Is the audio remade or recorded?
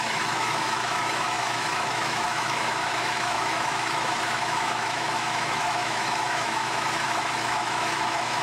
remade